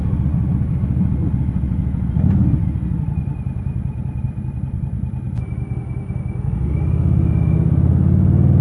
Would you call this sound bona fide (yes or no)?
yes